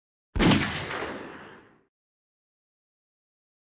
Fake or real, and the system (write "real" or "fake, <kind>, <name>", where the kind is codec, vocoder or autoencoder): real